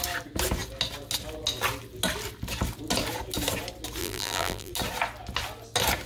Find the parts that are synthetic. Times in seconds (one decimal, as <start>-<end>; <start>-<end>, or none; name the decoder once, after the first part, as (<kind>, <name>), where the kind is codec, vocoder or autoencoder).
4.0-4.7 (vocoder, BigVGAN v2)